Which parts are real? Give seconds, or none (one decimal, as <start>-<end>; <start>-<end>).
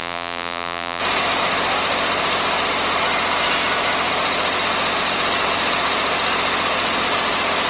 1.0-7.7